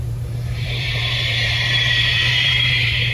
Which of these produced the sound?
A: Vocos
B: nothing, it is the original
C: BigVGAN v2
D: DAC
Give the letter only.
C